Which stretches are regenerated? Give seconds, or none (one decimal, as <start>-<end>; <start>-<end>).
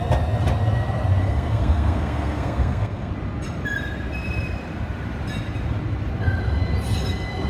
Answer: 1.2-3.1